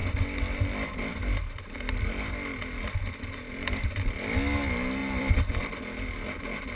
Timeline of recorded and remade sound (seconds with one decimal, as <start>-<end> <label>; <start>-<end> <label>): 0.0-6.8 recorded